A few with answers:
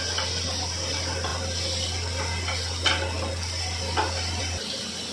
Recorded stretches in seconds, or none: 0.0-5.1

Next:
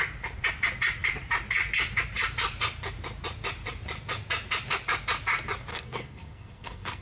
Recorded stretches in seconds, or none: 0.0-5.7

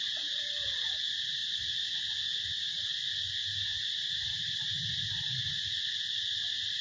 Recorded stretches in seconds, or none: 0.0-6.8

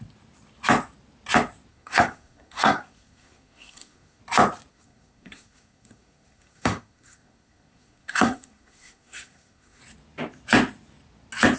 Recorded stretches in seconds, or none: 0.0-1.7; 4.2-4.7; 9.8-11.6

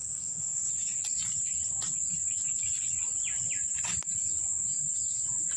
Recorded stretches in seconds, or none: 0.7-5.6

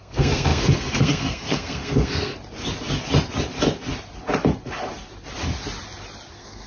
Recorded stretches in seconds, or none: 2.3-6.3